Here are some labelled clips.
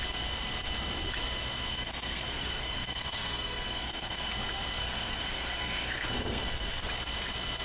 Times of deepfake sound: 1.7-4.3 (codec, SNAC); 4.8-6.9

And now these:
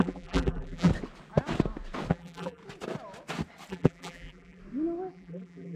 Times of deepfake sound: 0.0-0.9 (vocoder, BigVGAN v2); 2.1-2.6; 3.7-4.6; 5.1-5.8

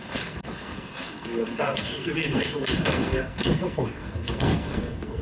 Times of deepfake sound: 0.0-5.2 (codec, SNAC)

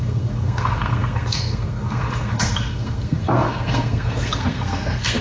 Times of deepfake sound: 0.0-5.2 (codec, SNAC)